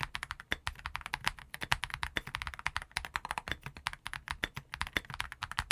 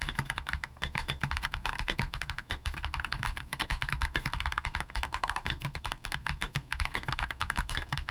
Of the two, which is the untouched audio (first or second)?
first